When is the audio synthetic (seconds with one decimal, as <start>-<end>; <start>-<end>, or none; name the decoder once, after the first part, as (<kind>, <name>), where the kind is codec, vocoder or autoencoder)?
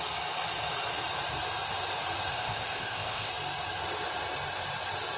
2.3-3.3 (codec, ZipCodec)